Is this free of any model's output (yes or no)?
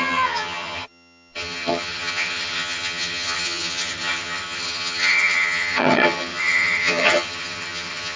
no